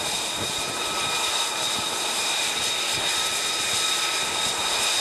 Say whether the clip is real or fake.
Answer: fake